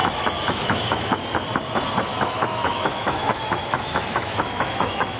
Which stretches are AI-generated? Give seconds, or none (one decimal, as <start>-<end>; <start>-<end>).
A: 0.0-1.1; 2.1-5.2